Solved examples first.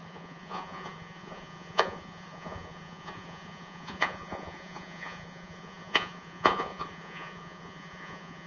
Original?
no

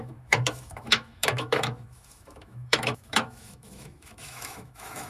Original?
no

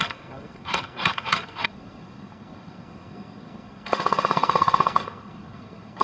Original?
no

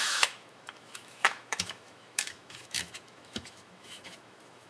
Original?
no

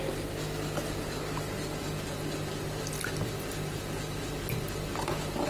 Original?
yes